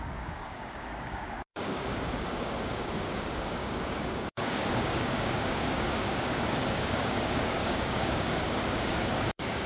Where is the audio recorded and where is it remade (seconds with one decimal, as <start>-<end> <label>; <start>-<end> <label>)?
0.0-9.7 remade